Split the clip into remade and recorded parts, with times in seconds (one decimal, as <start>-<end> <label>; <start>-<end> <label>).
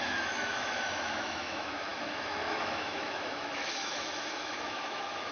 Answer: 0.0-5.3 remade